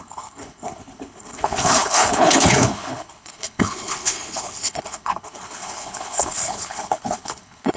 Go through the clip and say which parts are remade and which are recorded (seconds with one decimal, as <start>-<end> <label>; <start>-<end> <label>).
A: 0.0-7.8 remade